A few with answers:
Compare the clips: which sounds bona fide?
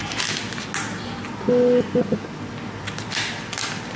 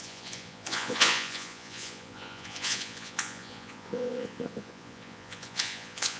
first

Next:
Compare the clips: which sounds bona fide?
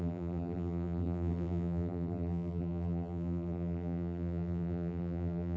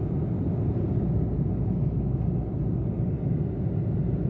second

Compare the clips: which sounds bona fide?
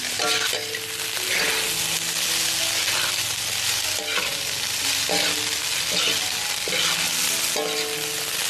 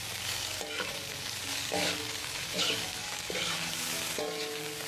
first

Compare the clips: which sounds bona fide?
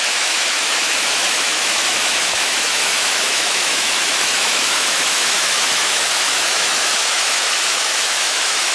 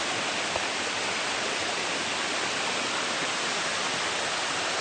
second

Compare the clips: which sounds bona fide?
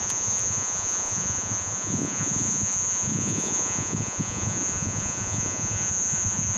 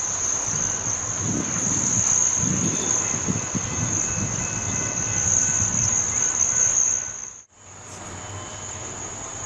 second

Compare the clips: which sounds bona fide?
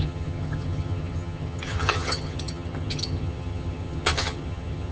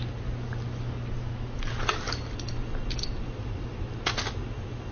second